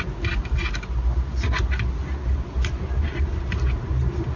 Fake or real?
real